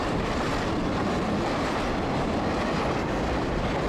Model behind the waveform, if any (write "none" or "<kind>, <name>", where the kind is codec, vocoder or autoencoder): none